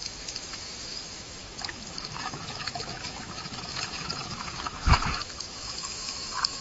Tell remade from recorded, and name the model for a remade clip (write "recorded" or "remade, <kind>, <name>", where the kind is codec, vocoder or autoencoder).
remade, autoencoder, DAC-VAE